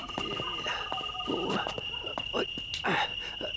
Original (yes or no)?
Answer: yes